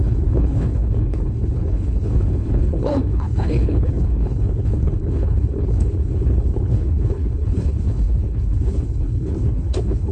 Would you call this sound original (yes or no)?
no